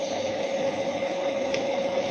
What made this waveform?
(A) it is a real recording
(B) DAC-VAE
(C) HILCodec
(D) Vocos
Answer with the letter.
C